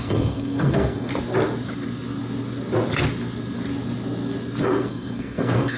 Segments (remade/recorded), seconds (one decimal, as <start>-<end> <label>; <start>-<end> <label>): 0.0-1.1 remade; 1.1-4.6 recorded; 4.6-5.8 remade